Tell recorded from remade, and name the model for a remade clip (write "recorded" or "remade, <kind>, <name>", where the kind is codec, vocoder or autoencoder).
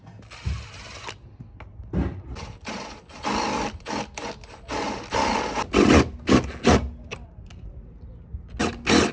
recorded